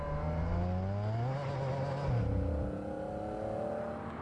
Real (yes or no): yes